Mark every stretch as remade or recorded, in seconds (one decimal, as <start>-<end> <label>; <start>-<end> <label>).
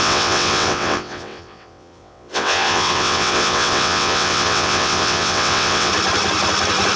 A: 0.0-5.9 remade; 5.9-7.0 recorded